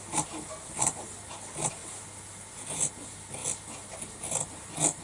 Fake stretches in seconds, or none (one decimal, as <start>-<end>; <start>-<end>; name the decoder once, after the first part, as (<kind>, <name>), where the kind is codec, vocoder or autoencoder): none